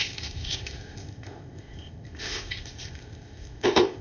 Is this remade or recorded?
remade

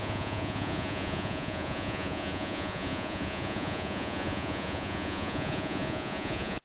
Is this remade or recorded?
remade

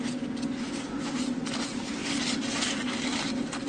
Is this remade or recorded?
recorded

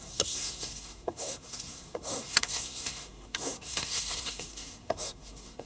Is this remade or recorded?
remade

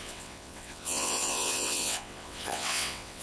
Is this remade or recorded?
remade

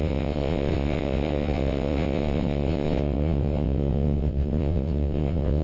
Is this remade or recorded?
remade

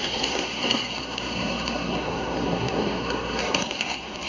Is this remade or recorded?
remade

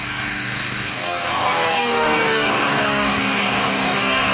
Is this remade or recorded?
remade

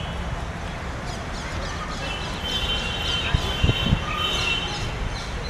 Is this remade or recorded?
recorded